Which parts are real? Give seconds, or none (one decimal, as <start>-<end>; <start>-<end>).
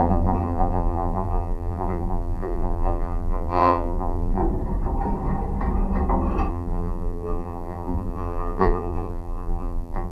4.4-6.5